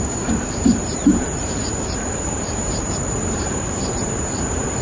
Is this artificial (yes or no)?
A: yes